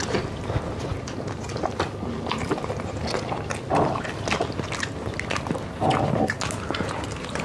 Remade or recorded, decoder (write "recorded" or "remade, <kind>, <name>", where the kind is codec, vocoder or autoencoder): recorded